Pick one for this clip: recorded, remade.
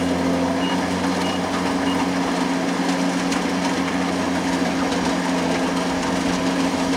recorded